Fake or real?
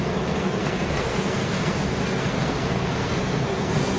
fake